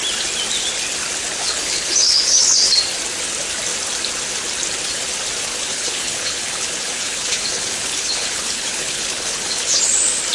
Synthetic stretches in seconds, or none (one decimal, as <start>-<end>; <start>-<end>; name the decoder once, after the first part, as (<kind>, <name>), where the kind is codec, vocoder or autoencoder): 1.4-2.8 (codec, HILCodec); 5.5-9.8